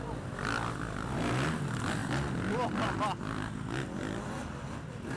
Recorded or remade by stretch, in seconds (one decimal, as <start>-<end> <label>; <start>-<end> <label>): 0.0-5.2 recorded